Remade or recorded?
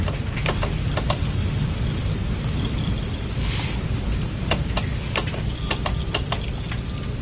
recorded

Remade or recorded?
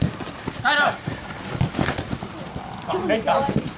recorded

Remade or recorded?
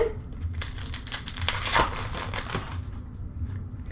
remade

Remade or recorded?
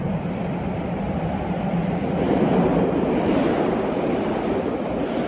remade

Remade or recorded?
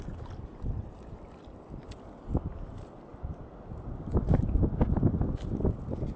recorded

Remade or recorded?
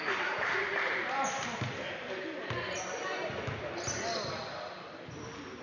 recorded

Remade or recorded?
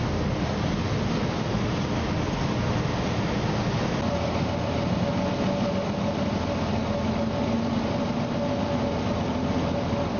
recorded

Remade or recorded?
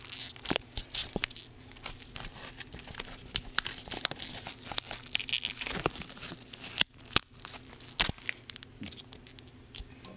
recorded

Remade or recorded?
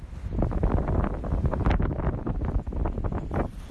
recorded